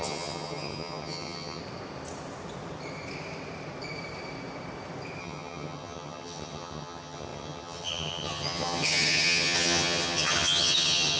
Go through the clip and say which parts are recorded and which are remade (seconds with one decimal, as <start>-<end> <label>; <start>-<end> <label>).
0.0-1.6 remade; 1.6-5.2 recorded; 5.2-11.2 remade